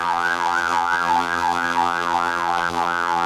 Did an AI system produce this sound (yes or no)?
yes